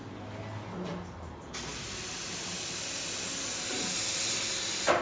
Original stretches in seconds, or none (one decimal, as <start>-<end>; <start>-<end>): 0.0-5.0